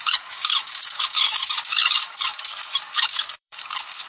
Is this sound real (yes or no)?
no